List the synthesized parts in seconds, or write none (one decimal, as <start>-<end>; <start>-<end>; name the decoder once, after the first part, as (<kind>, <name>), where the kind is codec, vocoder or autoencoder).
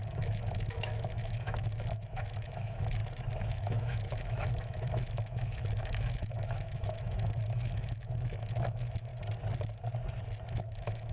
0.0-3.0 (autoencoder, DAC-VAE); 3.5-9.1; 10.5-11.1